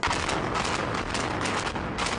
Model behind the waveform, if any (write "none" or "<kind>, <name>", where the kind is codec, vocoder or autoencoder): none